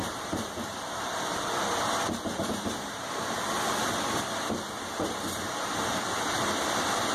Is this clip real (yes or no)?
yes